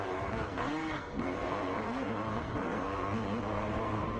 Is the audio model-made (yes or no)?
yes